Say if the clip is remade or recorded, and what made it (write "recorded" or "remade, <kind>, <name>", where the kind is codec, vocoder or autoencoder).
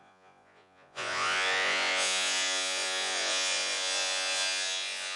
remade, vocoder, Vocos